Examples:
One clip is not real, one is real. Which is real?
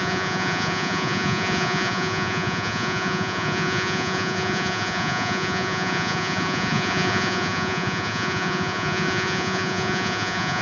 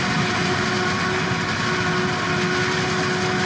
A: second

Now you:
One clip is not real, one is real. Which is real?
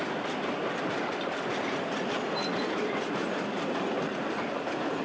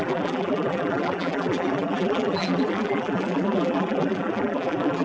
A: first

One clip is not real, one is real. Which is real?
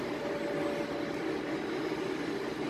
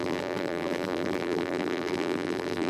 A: first